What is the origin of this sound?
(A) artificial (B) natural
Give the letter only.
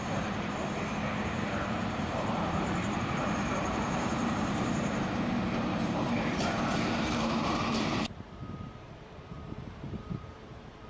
A